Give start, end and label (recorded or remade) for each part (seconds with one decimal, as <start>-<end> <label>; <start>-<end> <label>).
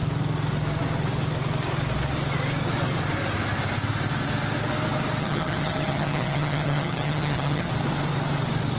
0.0-5.2 recorded; 5.2-7.7 remade; 7.7-8.8 recorded